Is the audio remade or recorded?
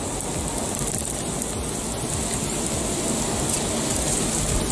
recorded